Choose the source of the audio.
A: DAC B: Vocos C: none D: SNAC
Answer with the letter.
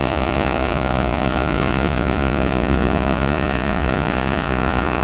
B